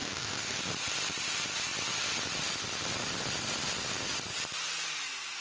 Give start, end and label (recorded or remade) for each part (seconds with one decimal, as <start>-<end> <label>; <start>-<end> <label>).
0.0-0.6 remade; 0.6-5.4 recorded